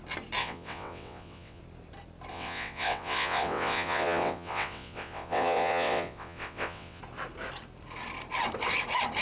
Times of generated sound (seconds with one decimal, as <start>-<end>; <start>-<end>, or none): 0.4-1.6; 2.3-7.0